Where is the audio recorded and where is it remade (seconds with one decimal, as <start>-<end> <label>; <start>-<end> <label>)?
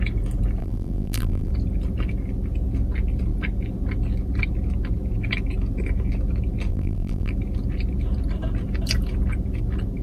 0.0-0.6 recorded; 0.6-1.5 remade; 1.5-6.7 recorded; 6.7-7.3 remade; 7.3-10.0 recorded